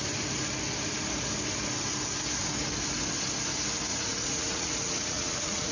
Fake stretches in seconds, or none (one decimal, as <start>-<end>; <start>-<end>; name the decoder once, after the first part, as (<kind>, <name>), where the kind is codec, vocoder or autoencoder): 3.9-5.7 (vocoder, Vocos)